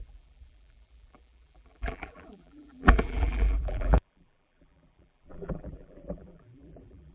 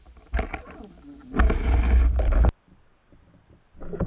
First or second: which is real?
second